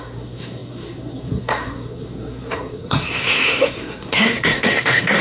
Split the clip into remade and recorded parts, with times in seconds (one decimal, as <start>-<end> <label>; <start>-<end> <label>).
0.0-5.2 remade